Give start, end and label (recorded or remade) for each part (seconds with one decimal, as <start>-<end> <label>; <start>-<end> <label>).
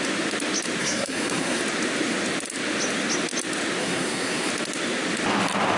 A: 0.0-0.8 recorded; 0.8-1.6 remade; 1.6-3.8 recorded; 3.8-4.5 remade; 4.5-5.8 recorded